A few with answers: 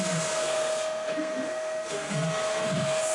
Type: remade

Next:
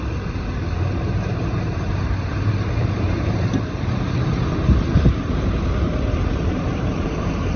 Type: remade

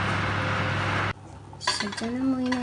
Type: recorded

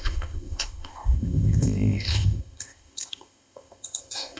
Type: remade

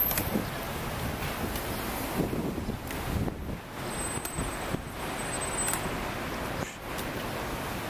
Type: recorded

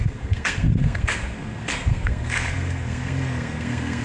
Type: remade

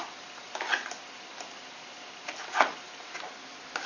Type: recorded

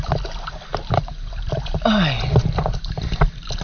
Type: recorded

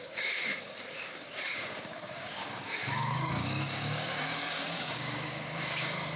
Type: remade